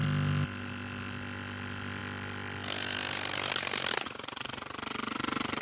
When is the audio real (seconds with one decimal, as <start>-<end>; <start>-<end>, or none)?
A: 0.0-5.6